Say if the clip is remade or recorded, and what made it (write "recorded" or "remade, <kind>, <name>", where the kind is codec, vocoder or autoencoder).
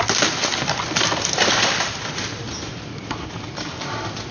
recorded